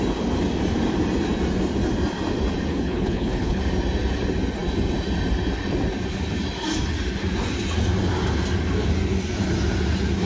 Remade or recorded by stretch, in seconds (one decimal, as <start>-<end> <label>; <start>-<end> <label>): 0.0-2.7 recorded; 2.7-3.6 remade; 3.6-10.2 recorded